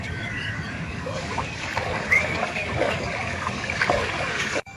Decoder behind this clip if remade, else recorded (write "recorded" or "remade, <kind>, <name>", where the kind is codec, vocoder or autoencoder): remade, codec, DAC